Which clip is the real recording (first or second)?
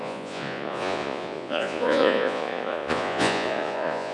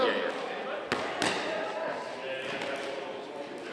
second